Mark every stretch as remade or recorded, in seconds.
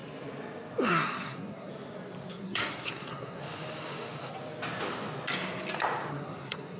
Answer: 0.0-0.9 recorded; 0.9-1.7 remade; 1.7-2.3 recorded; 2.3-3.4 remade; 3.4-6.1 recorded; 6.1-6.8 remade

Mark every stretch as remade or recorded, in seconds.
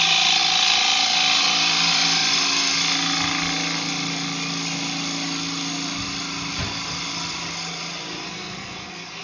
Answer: 0.0-8.3 recorded; 8.3-9.2 remade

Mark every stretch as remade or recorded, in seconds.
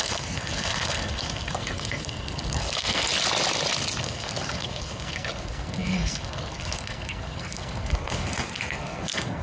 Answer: 0.0-3.1 remade; 3.1-4.0 recorded; 4.0-9.4 remade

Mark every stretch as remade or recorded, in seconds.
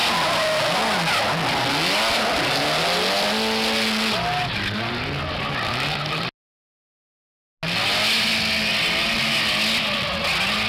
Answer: 0.0-10.7 recorded